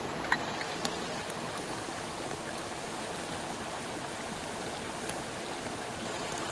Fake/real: real